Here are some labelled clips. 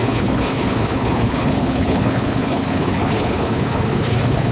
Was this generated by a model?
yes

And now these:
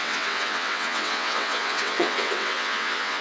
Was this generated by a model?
yes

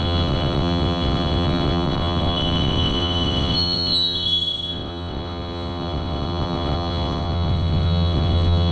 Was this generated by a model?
yes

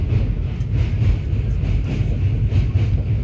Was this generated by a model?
no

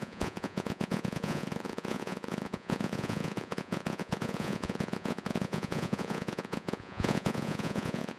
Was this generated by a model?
yes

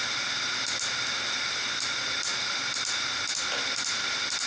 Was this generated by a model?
no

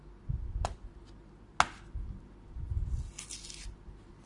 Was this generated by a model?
no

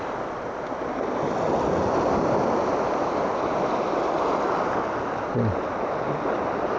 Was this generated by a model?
no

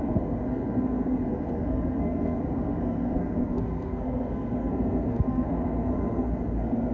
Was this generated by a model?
yes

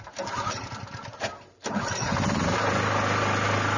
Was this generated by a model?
no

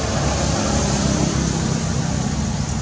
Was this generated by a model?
no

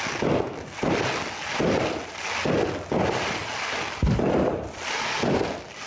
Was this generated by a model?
no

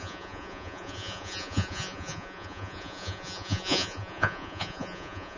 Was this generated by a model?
yes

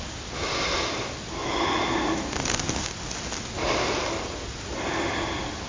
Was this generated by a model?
no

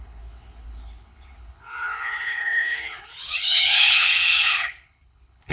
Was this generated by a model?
yes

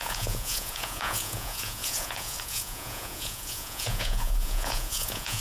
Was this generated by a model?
yes